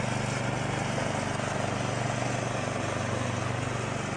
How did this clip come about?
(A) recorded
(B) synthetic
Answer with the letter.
A